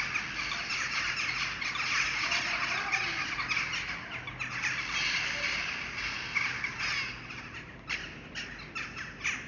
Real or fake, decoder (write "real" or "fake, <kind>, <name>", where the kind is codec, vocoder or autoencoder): real